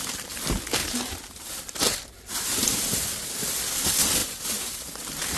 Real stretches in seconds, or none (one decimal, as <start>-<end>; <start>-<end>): 0.0-0.8; 1.5-1.9; 3.1-4.2; 4.8-5.4